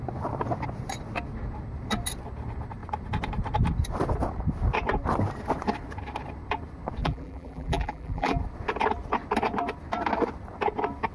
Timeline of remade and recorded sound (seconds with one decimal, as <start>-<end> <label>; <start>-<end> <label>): 0.0-7.0 recorded; 7.0-8.4 remade; 8.4-11.1 recorded